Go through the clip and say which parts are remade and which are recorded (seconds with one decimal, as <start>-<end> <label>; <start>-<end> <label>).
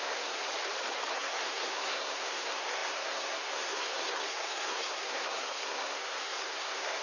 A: 0.0-0.5 remade; 0.5-1.1 recorded; 1.1-7.0 remade